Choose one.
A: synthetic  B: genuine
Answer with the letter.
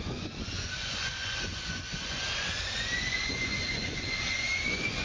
A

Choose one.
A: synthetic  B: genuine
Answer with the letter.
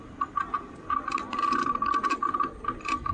B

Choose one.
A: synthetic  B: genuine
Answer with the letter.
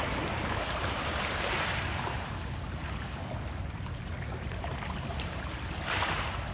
B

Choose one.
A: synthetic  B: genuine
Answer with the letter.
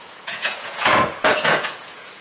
A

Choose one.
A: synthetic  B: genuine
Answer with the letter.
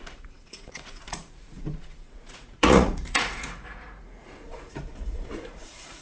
A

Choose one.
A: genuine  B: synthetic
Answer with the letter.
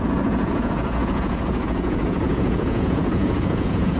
B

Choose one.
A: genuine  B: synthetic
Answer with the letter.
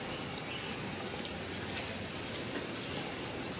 A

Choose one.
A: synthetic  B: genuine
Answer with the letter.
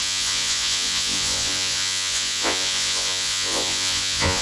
A